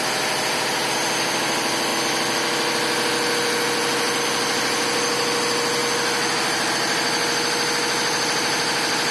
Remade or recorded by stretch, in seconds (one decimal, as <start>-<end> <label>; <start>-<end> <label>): 0.0-9.1 recorded